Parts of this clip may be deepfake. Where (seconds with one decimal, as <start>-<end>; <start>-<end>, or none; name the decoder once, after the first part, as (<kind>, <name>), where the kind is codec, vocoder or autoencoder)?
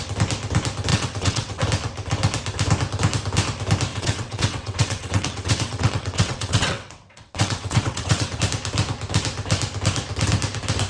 0.9-1.6 (vocoder, WaveNeXt); 3.9-8.4